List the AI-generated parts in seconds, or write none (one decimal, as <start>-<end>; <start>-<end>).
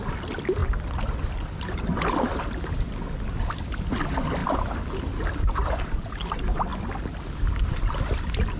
4.4-5.7